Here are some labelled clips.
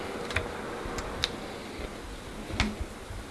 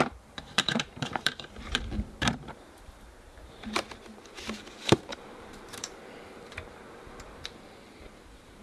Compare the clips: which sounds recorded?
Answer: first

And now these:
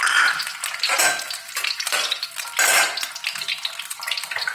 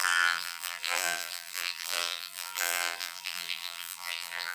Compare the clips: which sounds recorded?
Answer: first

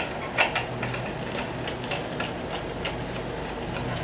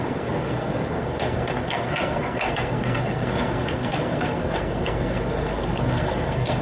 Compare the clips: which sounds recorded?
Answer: first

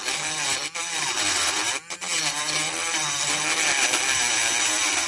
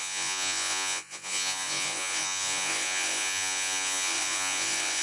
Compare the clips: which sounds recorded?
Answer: first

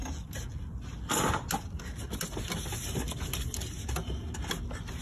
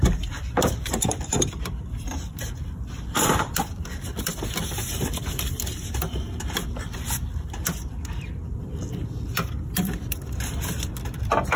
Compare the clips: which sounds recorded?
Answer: first